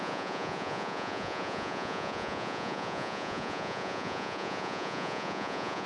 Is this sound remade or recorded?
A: remade